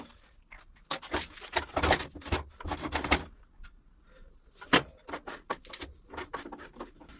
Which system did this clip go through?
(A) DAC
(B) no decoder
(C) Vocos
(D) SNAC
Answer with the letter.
B